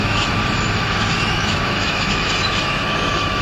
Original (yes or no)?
no